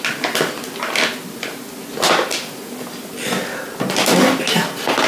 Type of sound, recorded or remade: recorded